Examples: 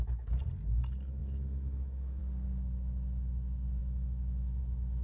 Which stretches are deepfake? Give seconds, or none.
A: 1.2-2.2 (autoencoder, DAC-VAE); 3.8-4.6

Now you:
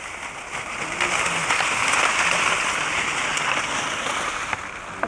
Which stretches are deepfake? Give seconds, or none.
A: none